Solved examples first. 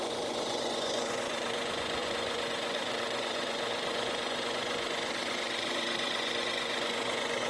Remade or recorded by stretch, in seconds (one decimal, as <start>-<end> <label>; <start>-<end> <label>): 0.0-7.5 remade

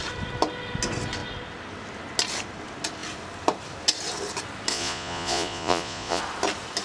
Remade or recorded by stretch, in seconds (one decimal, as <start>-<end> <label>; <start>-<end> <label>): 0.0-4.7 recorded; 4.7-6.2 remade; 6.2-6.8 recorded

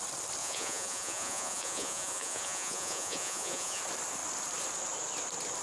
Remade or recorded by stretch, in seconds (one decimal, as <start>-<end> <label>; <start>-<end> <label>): 0.0-0.4 recorded; 0.4-3.8 remade; 3.8-5.6 recorded